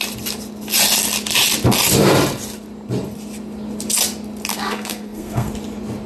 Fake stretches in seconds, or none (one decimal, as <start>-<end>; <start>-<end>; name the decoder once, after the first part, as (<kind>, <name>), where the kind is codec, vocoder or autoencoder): 4.5-5.5 (codec, SNAC)